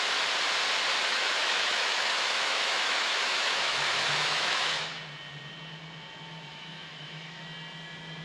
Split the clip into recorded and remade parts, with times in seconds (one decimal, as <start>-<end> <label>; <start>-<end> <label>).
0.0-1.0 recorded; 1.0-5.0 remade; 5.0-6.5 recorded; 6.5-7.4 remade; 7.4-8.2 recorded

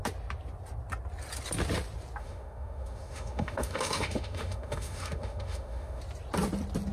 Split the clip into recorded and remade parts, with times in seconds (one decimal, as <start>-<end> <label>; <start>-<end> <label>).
0.0-2.2 recorded; 2.2-6.0 remade; 6.0-6.9 recorded

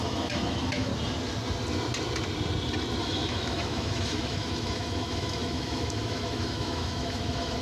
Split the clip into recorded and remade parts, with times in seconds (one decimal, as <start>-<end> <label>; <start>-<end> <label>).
0.0-0.9 remade; 0.9-3.0 recorded; 3.0-7.6 remade

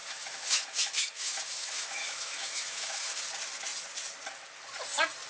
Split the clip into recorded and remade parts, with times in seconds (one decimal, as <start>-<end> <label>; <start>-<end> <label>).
0.0-3.2 remade; 3.2-5.3 recorded